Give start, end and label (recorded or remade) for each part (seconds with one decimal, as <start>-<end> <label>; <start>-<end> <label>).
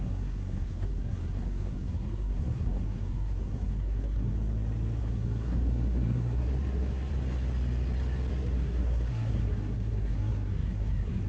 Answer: 0.0-4.3 remade; 4.3-5.0 recorded; 5.0-7.1 remade; 7.1-8.3 recorded; 8.3-11.3 remade